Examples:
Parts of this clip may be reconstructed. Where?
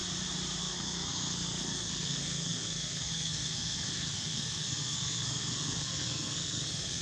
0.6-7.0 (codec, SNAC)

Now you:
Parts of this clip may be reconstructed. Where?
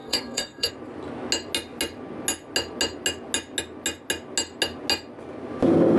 0.0-0.7 (codec, SNAC)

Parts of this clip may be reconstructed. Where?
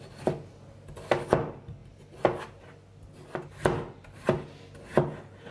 none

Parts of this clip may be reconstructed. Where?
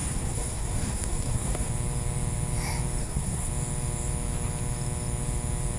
0.0-1.7 (codec, SNAC); 3.0-3.5